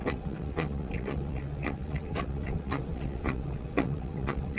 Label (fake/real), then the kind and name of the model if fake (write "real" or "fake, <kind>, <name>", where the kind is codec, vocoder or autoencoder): fake, vocoder, WaveNeXt